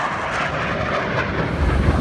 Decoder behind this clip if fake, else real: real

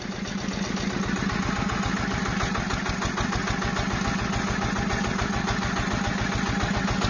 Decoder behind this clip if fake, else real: real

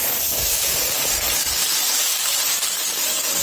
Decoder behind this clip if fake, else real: fake, codec, DAC